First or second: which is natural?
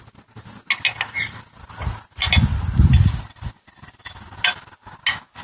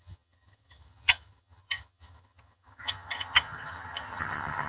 first